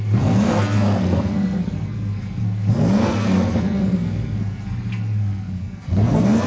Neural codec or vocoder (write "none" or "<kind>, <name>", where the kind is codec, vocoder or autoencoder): codec, SNAC